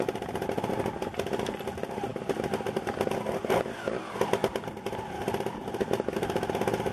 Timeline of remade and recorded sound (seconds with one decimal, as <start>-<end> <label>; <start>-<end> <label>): 0.0-6.9 recorded